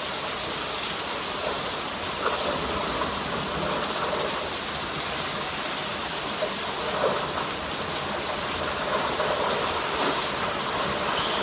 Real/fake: real